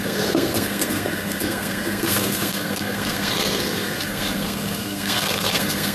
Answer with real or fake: fake